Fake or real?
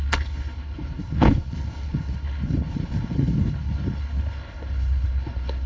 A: fake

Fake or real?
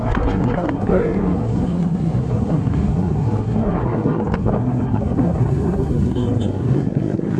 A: fake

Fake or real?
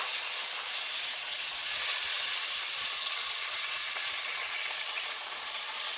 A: fake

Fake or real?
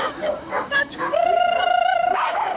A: fake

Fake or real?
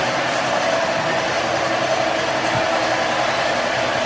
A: real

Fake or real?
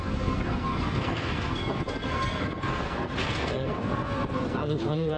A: fake